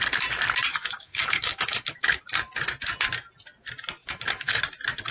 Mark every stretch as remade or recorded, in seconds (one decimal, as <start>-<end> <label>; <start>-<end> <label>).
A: 0.0-0.7 recorded; 0.7-2.2 remade; 2.2-4.0 recorded; 4.0-4.6 remade; 4.6-5.1 recorded